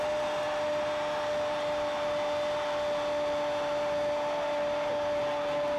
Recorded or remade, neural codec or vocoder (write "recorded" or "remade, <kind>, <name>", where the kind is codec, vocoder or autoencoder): recorded